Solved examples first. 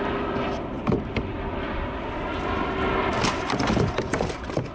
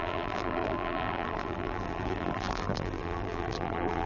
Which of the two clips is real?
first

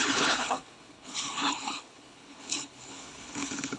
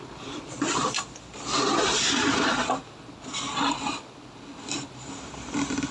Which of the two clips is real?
second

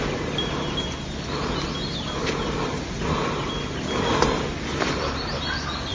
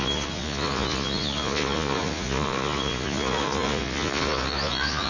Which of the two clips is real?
first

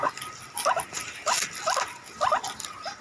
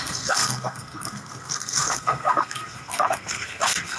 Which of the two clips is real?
first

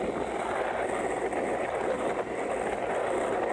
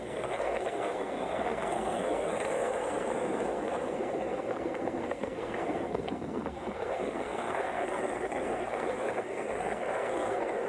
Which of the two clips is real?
first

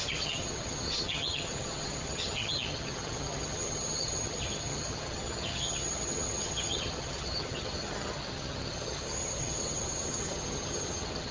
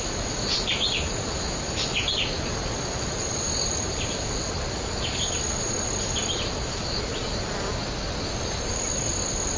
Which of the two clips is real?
second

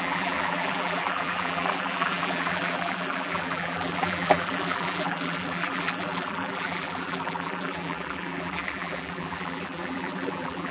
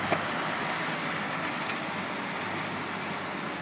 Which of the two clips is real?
second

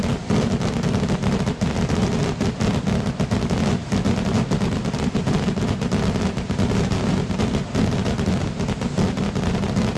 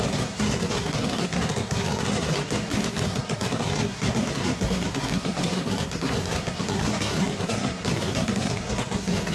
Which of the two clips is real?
first